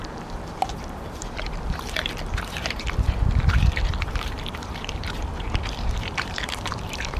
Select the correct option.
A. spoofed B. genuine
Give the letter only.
A